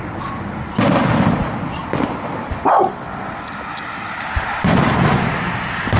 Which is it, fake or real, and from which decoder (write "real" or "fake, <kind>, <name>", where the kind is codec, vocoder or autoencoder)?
real